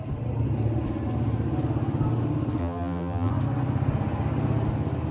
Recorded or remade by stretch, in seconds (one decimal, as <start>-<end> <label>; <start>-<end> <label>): 0.0-2.6 recorded; 2.6-3.3 remade; 3.3-5.1 recorded